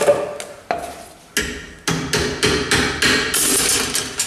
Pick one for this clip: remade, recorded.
recorded